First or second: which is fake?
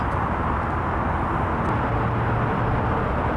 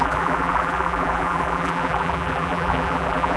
second